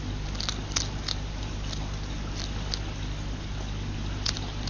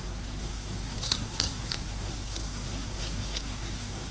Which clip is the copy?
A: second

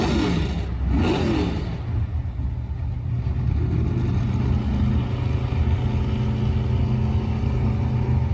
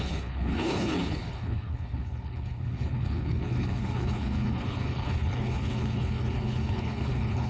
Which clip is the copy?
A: second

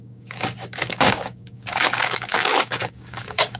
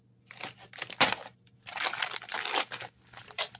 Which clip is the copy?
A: first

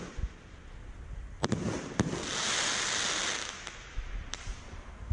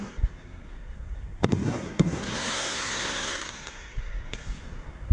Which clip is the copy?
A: second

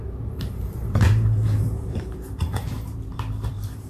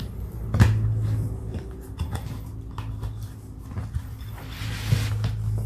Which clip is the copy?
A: first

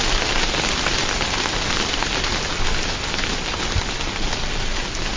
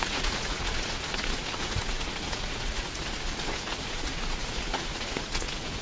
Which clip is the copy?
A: second